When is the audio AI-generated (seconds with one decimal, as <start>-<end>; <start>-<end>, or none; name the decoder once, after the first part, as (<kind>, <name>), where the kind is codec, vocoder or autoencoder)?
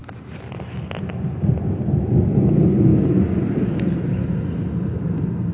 0.0-1.1 (vocoder, BigVGAN v2)